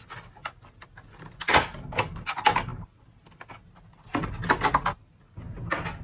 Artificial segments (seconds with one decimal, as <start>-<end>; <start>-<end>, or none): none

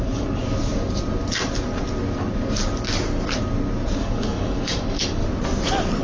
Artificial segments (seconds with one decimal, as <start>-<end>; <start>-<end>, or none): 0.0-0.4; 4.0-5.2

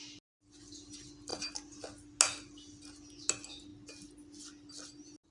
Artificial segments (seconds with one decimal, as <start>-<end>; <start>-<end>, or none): none

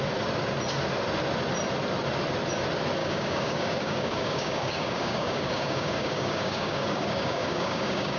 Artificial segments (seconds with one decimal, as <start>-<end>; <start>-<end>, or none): 3.0-8.2

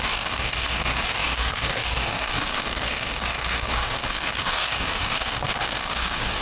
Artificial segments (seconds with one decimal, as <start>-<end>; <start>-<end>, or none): 0.0-6.4

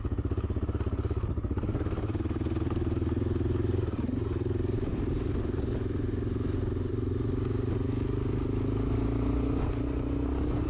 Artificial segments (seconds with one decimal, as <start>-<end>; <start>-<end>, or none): none

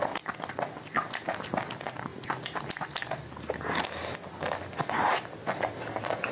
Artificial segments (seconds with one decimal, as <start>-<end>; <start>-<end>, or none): none

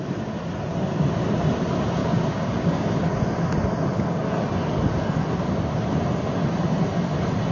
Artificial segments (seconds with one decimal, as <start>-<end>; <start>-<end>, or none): 2.0-3.2